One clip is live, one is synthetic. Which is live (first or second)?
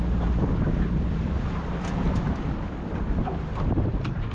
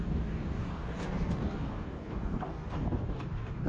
first